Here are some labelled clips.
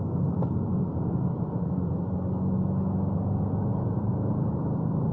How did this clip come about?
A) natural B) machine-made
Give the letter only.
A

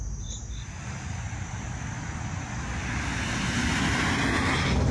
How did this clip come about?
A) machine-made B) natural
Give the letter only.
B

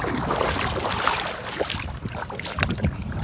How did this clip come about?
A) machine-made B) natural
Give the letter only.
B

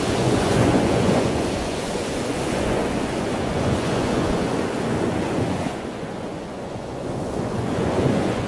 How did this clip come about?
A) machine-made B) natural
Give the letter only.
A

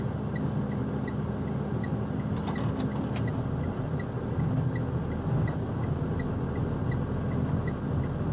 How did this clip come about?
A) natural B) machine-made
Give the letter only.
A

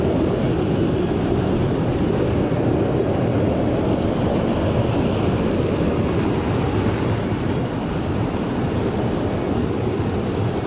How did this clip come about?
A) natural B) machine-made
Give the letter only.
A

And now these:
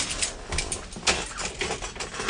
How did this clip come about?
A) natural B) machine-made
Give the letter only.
A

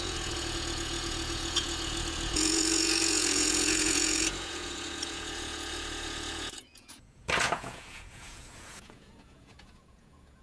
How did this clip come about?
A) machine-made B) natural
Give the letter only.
A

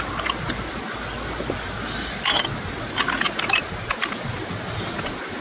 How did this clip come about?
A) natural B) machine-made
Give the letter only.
A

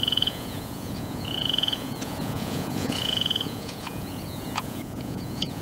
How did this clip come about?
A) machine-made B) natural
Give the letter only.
A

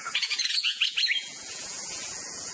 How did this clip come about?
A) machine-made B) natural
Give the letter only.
A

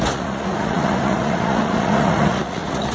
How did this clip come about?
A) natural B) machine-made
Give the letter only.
B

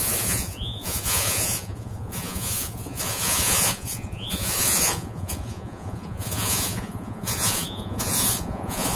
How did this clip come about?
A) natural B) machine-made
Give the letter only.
B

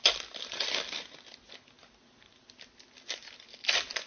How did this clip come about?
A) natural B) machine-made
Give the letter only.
A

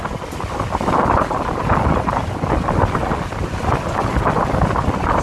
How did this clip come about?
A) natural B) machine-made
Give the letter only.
A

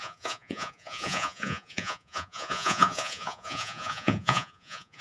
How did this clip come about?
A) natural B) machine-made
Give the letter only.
B